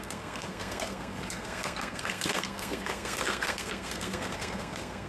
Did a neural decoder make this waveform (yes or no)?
yes